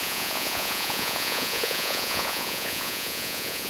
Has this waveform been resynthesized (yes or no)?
yes